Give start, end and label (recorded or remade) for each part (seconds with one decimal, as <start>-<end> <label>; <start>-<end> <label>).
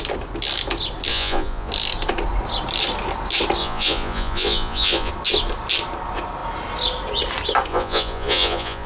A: 0.0-1.1 recorded; 1.1-1.7 remade; 1.7-3.6 recorded; 3.6-5.1 remade; 5.1-7.7 recorded; 7.7-8.9 remade